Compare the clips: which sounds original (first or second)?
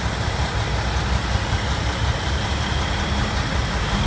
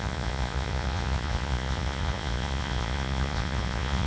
first